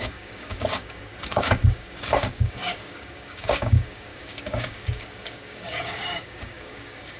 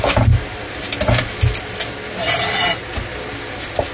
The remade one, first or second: first